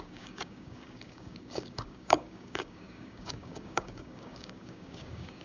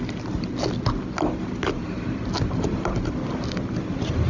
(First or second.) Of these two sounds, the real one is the second